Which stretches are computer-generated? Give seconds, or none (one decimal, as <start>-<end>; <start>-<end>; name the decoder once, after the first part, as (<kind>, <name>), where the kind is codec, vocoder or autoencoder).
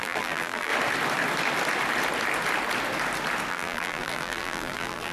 0.0-0.7 (vocoder, BigVGAN v2); 3.5-5.1